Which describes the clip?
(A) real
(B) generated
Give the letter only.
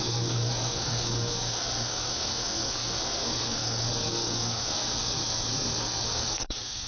B